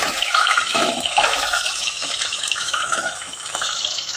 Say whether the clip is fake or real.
fake